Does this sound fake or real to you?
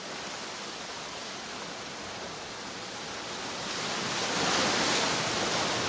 real